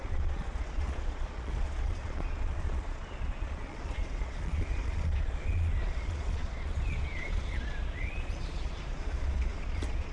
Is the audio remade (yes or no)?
yes